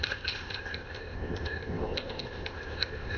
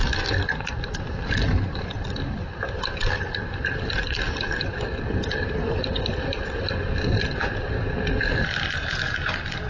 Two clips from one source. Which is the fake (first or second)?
first